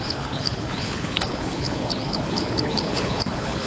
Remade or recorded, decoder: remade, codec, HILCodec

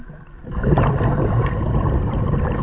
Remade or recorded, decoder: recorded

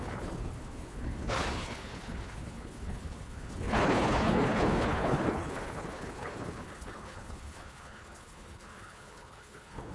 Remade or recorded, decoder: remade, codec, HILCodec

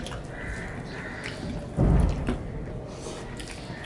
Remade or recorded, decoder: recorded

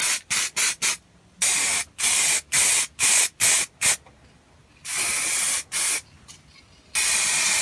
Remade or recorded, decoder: recorded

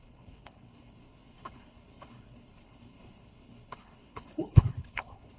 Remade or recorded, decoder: remade, codec, HILCodec